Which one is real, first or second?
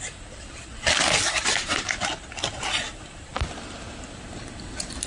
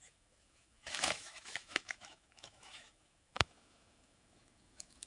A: first